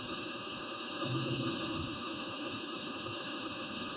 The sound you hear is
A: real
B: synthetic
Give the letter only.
B